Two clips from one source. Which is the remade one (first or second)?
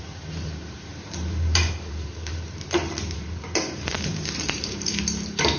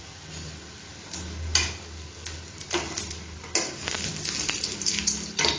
first